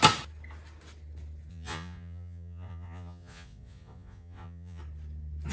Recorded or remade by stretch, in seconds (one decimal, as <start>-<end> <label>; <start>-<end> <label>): 0.0-1.5 recorded; 1.5-4.8 remade; 4.8-5.5 recorded